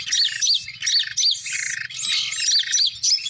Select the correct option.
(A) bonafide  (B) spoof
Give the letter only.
A